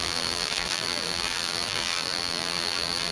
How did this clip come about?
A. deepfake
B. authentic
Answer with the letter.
A